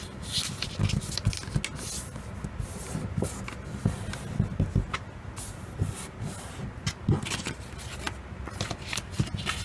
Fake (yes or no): no